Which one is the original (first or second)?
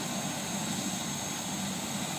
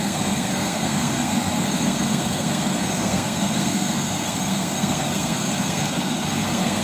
first